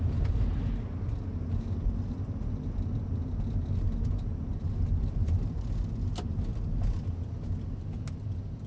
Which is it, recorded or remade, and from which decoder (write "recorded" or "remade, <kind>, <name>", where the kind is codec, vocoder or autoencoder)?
recorded